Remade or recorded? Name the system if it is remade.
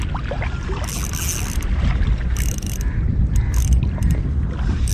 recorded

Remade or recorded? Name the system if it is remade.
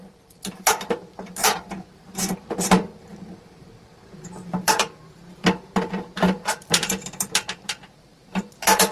remade, vocoder, BigVGAN v2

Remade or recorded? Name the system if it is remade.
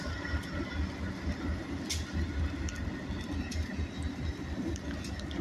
recorded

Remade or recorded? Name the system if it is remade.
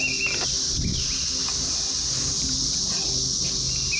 recorded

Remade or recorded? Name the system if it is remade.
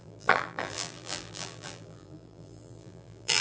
remade, vocoder, BigVGAN v2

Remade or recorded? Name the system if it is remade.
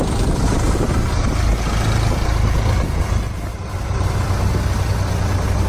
recorded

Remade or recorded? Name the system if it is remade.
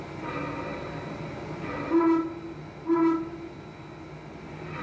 recorded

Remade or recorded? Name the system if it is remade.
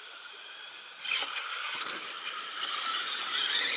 remade, vocoder, BigVGAN v2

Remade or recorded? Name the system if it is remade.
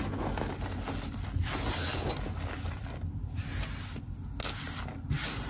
recorded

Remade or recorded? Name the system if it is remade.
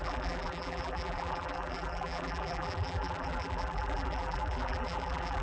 remade, vocoder, BigVGAN v2